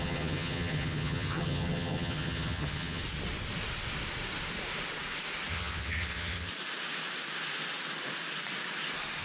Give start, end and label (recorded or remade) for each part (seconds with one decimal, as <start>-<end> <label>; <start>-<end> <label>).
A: 0.0-3.0 remade; 3.0-5.5 recorded; 5.5-6.5 remade; 6.5-9.2 recorded